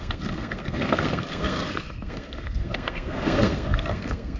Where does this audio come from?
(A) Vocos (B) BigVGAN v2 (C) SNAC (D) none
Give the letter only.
C